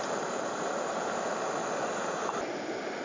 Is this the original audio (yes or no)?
yes